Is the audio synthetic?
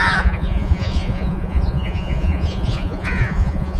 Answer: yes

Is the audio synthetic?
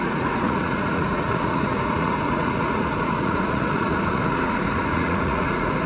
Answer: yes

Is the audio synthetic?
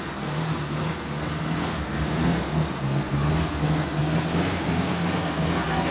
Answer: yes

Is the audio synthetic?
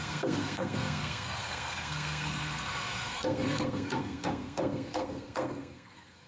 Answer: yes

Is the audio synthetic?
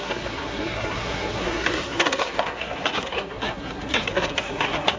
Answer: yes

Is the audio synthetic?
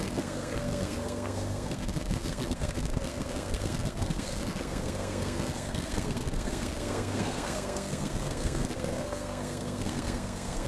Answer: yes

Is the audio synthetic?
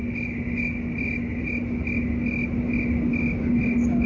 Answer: no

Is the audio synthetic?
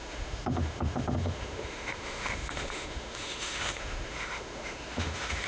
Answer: yes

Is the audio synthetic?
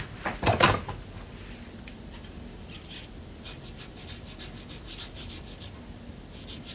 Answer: no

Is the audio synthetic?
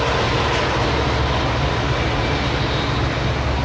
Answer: no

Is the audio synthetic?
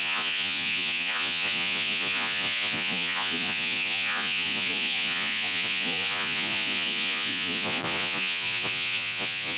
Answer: yes